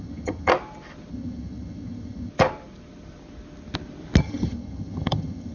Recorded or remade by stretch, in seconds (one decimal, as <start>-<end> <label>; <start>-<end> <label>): 0.0-0.5 remade; 0.5-1.1 recorded; 1.1-2.3 remade; 2.3-4.2 recorded; 4.2-5.5 remade